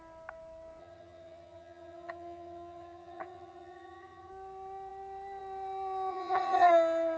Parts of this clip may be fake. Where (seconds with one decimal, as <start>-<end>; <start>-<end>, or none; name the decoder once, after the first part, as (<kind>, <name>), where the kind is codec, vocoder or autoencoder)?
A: 0.8-4.3 (vocoder, HiFi-GAN); 6.1-6.7